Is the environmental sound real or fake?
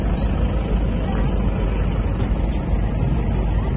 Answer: real